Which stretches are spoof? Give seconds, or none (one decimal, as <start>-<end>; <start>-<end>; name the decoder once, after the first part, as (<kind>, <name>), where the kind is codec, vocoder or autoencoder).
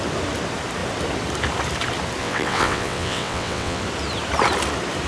2.2-3.8 (vocoder, WaveNeXt)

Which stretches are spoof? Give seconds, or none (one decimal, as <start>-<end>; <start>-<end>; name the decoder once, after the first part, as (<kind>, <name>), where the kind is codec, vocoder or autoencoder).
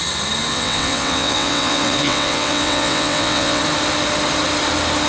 0.5-3.6 (vocoder, WaveNeXt)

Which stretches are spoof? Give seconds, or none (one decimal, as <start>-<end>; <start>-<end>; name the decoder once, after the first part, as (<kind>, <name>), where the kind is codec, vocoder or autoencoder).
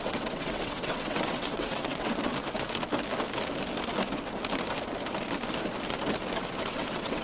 0.0-2.3 (vocoder, WaveNeXt); 6.6-7.2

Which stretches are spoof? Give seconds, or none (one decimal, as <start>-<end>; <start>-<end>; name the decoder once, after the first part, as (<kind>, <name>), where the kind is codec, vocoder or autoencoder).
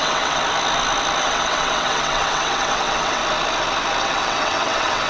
0.0-0.4 (vocoder, WaveNeXt); 1.2-3.2; 4.0-5.1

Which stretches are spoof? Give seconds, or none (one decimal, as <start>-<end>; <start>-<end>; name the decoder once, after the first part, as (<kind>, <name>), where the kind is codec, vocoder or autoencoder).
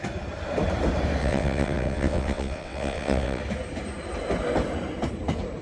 1.2-3.4 (vocoder, WaveNeXt)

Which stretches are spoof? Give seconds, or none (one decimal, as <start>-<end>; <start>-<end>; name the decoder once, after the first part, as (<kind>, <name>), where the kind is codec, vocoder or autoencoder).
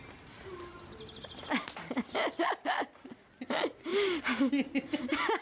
none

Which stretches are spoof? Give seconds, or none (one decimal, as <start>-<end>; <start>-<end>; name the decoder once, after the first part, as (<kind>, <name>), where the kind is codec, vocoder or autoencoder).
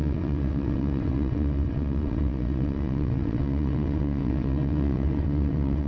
0.0-5.9 (vocoder, WaveNeXt)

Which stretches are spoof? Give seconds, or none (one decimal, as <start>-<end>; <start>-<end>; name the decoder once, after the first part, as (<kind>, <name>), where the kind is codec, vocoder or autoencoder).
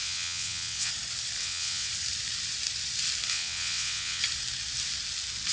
0.0-0.9 (vocoder, WaveNeXt); 1.4-1.9; 3.3-4.2